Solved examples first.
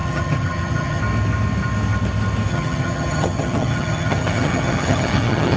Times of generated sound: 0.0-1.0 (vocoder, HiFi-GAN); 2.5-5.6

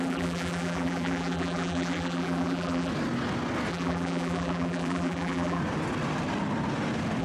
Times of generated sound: 0.0-2.9 (vocoder, BigVGAN v2); 3.7-5.6

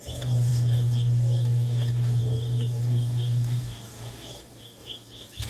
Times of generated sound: 0.0-5.5 (codec, DAC)

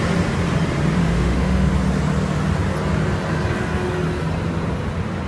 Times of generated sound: 1.0-1.7 (autoencoder, DAC-VAE)

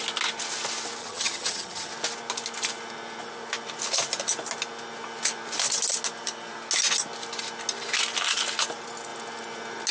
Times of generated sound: 1.0-1.9 (vocoder, HiFi-GAN)

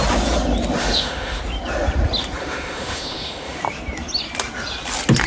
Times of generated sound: 0.8-1.4 (autoencoder, DAC-VAE); 2.4-3.6